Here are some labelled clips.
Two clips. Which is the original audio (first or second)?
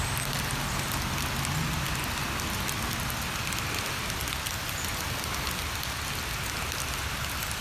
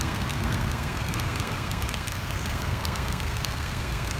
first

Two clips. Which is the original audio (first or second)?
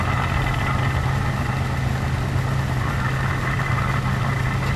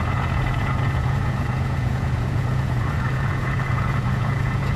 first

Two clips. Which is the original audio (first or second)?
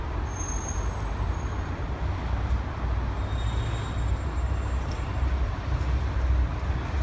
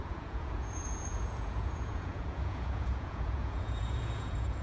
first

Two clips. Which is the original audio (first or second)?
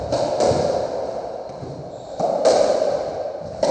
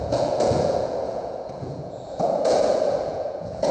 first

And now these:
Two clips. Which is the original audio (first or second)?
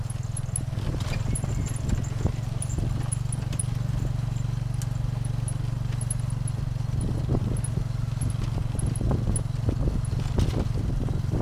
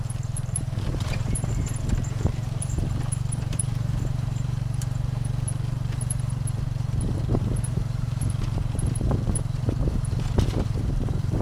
first